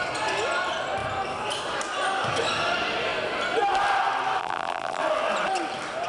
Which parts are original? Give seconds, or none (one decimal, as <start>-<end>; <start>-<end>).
0.0-4.4; 5.0-6.1